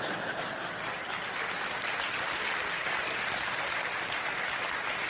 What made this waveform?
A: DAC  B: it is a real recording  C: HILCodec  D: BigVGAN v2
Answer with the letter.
D